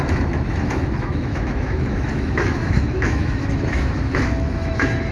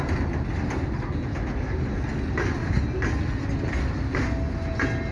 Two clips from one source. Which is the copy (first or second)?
first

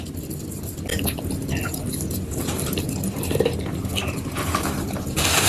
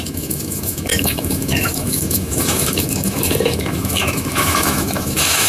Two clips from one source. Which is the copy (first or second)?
second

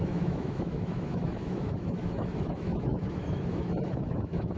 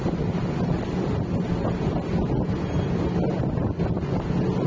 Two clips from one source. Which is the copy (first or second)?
first